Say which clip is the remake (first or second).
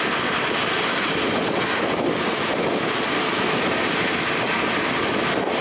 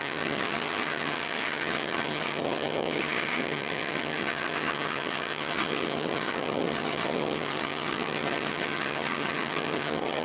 second